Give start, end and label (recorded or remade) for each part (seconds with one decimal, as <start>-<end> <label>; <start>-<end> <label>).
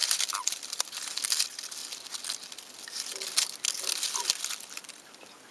0.0-0.9 remade; 0.9-5.5 recorded